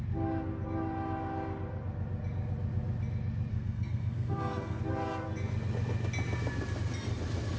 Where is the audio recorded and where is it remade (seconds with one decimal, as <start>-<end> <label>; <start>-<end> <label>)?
0.0-3.5 recorded; 3.5-4.8 remade; 4.8-7.6 recorded